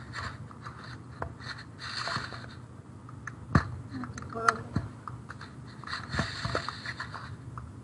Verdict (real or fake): real